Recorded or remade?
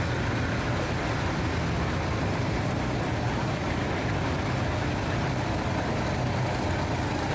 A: recorded